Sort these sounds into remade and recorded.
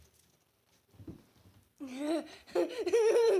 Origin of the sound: remade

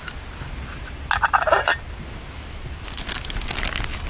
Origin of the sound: recorded